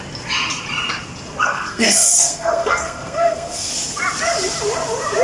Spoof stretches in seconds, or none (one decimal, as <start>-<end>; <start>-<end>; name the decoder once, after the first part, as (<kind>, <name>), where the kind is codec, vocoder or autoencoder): 1.4-3.7 (codec, SNAC)